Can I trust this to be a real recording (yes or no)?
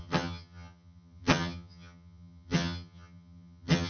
no